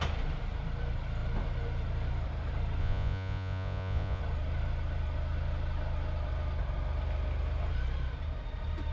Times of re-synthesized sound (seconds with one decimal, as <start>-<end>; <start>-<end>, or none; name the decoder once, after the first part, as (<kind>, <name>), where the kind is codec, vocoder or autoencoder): 2.8-4.2 (vocoder, Vocos)